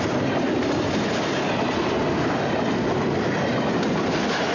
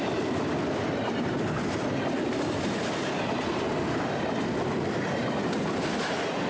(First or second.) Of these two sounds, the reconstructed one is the second